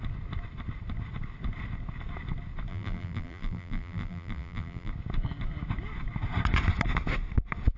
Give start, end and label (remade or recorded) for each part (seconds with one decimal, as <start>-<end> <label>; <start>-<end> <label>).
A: 0.0-2.7 recorded; 2.7-4.9 remade; 4.9-7.8 recorded